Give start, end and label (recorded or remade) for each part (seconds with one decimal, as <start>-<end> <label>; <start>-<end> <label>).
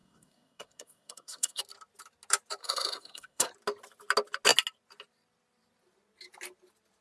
0.0-1.6 remade; 1.6-2.6 recorded; 2.6-3.5 remade; 3.5-7.0 recorded